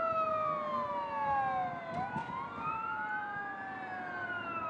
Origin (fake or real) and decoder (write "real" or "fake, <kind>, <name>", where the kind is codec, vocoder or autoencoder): real